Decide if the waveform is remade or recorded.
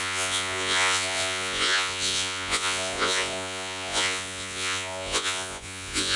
remade